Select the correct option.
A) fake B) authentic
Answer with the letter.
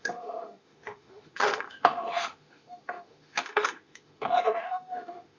A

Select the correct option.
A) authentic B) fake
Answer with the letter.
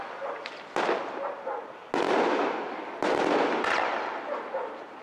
A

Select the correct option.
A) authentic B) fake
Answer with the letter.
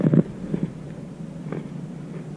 A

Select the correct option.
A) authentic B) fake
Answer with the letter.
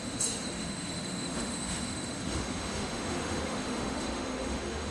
B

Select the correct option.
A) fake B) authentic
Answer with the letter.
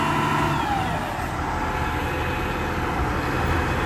B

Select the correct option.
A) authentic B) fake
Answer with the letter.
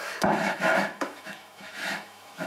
B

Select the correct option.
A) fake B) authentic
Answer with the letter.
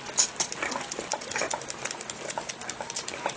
B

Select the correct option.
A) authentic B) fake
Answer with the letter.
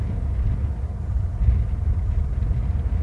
A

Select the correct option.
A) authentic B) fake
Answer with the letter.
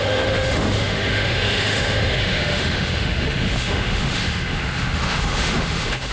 B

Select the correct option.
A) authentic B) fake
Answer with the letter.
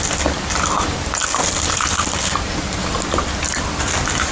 A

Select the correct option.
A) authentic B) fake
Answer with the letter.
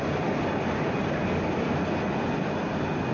A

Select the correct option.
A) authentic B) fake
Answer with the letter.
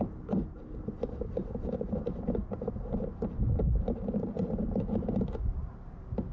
A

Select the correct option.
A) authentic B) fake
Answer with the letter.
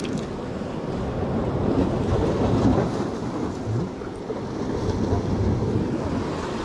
A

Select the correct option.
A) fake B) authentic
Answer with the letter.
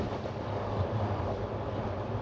B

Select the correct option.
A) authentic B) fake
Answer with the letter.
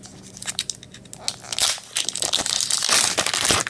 A